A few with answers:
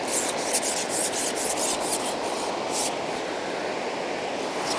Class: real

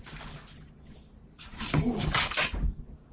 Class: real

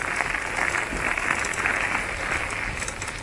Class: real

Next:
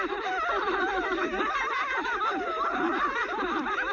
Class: fake